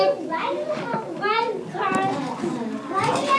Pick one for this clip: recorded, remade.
recorded